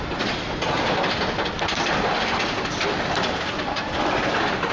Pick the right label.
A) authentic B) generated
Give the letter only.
B